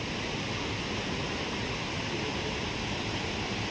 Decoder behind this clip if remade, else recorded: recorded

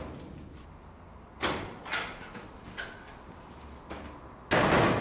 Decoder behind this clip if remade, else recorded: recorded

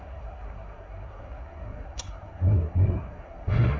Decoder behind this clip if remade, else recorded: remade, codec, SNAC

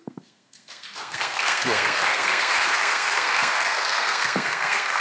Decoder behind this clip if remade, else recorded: remade, codec, SNAC